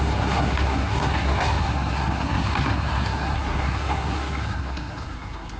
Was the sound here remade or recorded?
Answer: remade